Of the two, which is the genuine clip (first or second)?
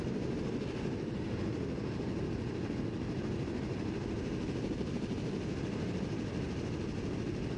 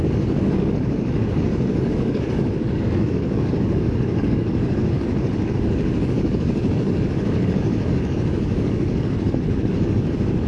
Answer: first